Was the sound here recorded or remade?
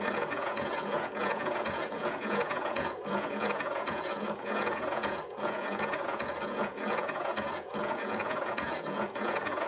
remade